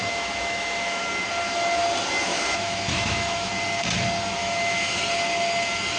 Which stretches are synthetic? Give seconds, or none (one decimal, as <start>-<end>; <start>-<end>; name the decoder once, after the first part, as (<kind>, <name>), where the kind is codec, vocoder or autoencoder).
0.0-1.0 (autoencoder, DAC-VAE); 2.3-3.5; 4.4-5.0